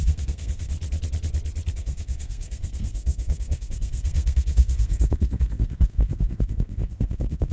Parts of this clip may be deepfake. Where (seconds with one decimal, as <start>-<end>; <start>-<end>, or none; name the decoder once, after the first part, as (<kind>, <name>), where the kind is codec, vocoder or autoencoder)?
0.0-0.7 (codec, SNAC); 1.7-7.5